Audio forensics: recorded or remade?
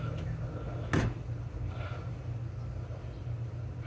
recorded